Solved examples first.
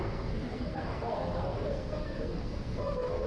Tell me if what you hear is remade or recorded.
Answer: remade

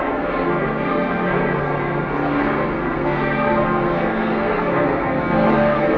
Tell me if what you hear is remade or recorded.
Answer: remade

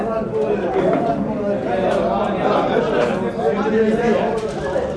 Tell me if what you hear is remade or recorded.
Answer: recorded